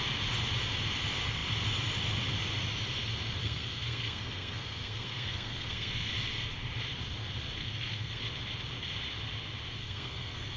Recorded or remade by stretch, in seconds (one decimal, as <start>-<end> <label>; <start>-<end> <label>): 0.0-3.4 recorded; 3.4-6.1 remade; 6.1-7.6 recorded; 7.6-8.2 remade; 8.2-9.8 recorded; 9.8-10.6 remade